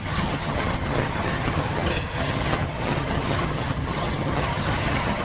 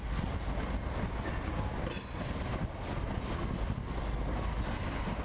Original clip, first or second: second